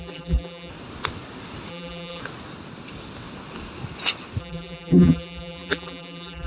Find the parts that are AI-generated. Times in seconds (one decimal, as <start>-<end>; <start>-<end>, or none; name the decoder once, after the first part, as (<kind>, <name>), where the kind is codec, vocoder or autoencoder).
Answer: 0.0-0.7 (vocoder, BigVGAN v2); 1.7-2.2; 4.4-6.5